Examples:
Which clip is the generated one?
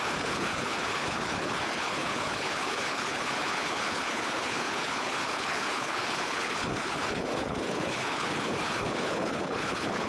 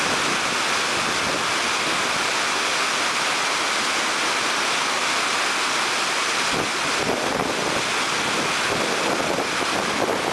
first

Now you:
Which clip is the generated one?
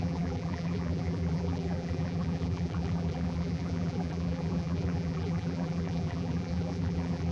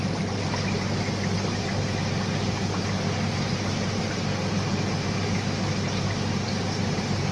first